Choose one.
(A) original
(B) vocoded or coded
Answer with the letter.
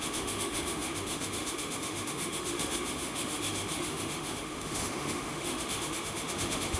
B